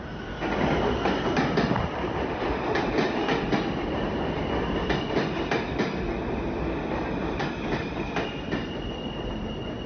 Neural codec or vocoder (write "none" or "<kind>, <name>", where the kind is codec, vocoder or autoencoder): none